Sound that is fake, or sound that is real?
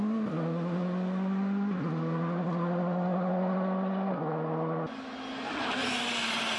real